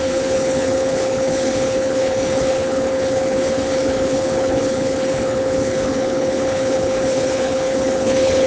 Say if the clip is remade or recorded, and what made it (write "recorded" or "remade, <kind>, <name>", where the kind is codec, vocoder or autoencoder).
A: remade, codec, HILCodec